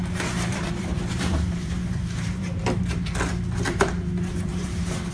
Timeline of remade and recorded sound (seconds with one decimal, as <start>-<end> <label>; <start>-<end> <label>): 0.0-2.8 remade; 2.8-4.5 recorded; 4.5-5.1 remade